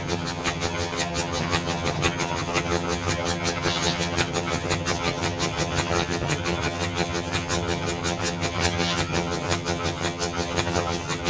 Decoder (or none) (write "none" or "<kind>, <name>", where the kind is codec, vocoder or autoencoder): vocoder, HiFi-GAN